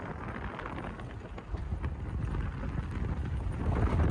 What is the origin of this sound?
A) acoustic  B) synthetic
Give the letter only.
A